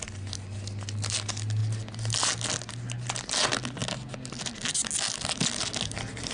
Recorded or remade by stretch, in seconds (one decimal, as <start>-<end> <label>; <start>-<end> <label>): 0.0-6.3 recorded